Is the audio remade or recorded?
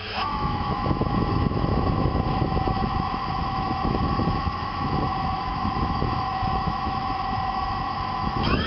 remade